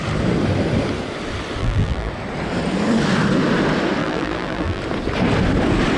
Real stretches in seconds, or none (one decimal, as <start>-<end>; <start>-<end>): 0.0-1.6; 2.1-4.0; 4.8-6.0